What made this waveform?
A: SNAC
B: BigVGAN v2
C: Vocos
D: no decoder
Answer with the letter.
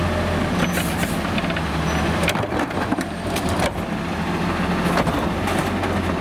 D